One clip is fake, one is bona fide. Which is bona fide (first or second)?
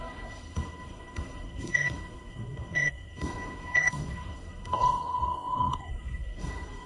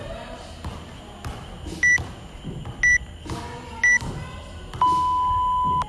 second